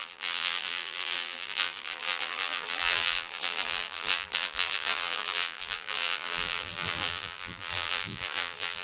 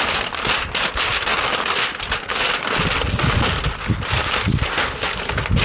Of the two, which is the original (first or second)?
second